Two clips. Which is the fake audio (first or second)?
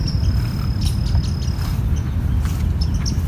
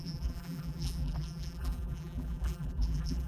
second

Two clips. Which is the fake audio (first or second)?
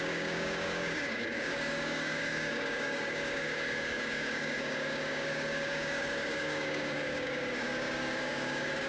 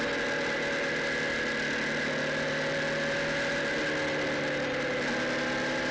first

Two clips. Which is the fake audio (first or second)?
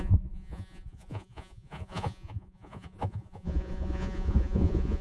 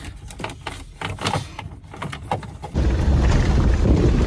first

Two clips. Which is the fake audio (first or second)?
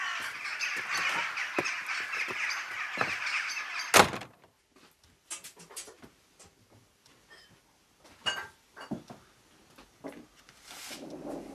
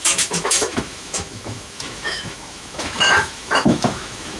second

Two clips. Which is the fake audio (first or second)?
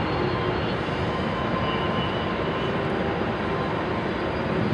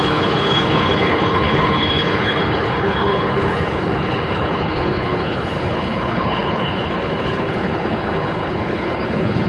second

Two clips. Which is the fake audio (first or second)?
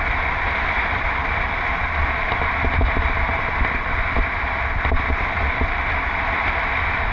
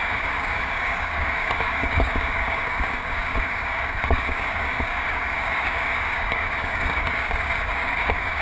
second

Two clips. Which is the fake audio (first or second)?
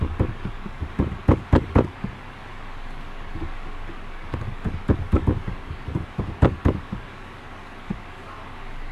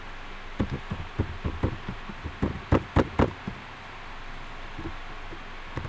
first